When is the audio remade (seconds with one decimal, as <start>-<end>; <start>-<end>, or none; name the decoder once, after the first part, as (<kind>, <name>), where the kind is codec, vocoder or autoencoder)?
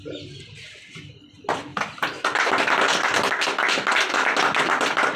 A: none